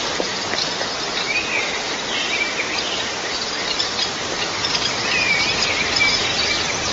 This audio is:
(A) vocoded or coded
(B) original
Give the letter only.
B